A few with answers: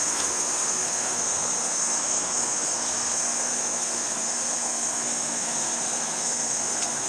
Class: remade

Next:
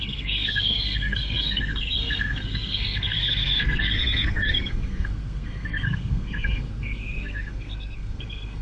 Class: remade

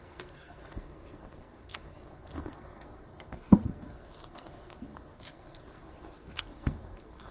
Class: remade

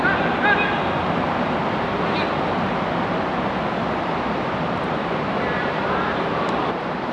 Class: recorded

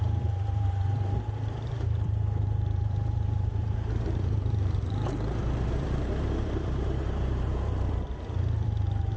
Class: remade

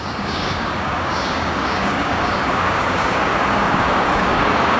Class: remade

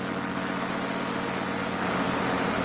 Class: recorded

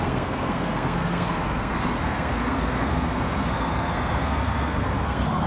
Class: remade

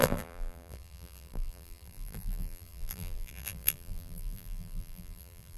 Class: remade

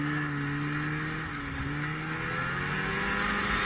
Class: recorded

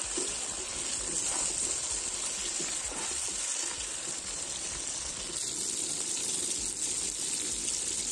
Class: recorded